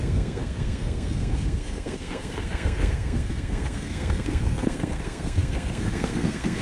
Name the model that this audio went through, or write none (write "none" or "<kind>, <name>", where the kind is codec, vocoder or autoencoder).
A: codec, SNAC